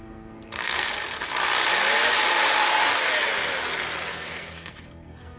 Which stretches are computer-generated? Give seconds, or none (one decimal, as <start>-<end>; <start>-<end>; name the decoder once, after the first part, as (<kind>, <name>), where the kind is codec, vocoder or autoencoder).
0.0-0.9 (codec, SNAC); 4.1-5.4